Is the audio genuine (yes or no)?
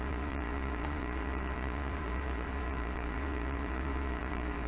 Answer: no